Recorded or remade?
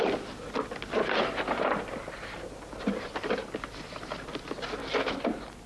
recorded